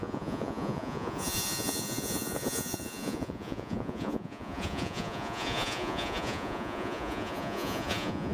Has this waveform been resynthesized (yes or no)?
yes